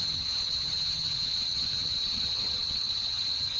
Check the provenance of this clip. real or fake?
fake